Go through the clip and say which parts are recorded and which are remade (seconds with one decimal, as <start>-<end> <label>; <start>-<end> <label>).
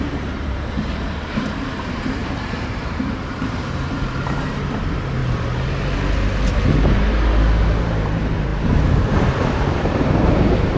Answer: 0.0-5.2 remade; 5.2-7.8 recorded; 7.8-10.8 remade